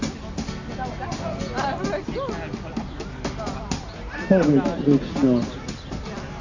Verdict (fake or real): real